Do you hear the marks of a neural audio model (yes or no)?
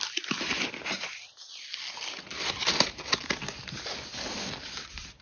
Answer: no